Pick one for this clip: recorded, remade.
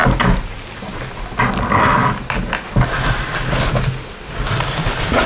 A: recorded